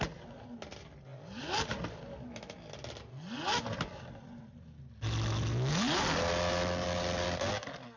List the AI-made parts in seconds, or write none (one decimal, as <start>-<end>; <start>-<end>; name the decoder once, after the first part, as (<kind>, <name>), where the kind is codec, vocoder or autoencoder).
1.1-1.7 (vocoder, BigVGAN v2)